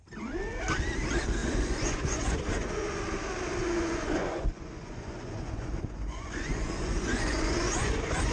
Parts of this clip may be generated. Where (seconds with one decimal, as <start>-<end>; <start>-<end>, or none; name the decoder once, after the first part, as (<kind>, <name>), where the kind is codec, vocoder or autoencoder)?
1.4-3.0 (vocoder, Vocos); 3.6-8.3